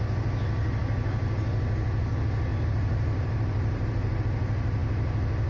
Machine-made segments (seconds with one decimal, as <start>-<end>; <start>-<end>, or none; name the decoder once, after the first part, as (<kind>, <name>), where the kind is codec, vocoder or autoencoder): 2.5-4.2 (vocoder, BigVGAN v2)